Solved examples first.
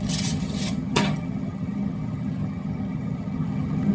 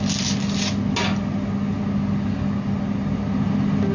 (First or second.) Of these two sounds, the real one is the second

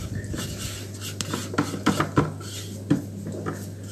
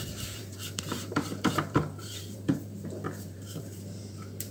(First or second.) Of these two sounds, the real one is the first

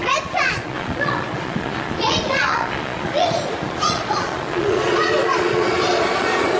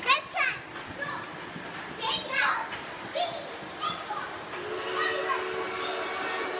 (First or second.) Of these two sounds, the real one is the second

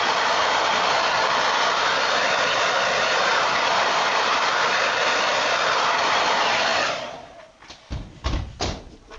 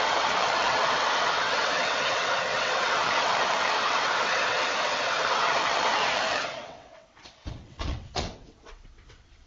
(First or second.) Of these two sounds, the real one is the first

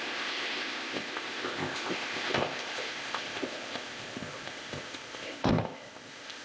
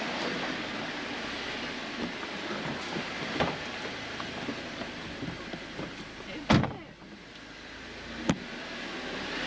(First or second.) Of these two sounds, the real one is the second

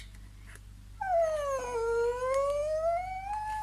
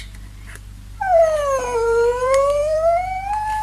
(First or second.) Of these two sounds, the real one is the first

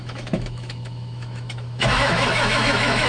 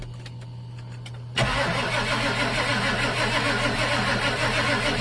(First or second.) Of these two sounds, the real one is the second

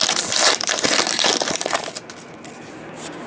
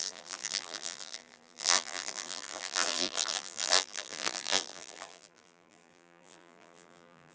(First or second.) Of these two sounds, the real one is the first